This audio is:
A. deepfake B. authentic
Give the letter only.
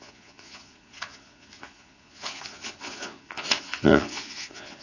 A